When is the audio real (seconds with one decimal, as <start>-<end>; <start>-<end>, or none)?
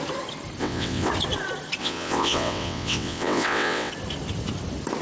0.0-0.6; 1.1-1.8; 3.9-5.0